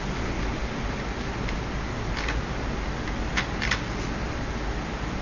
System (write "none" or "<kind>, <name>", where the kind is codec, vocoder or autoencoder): none